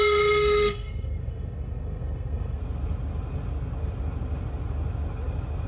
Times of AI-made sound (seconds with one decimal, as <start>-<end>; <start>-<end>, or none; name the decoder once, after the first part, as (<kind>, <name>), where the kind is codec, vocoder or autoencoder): 0.0-2.6 (codec, SNAC)